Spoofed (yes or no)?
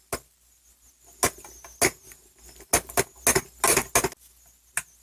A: no